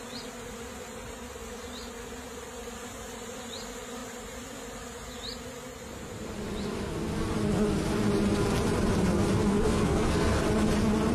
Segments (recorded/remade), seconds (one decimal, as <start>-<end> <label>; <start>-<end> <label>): 0.0-9.5 recorded; 9.5-10.4 remade; 10.4-11.1 recorded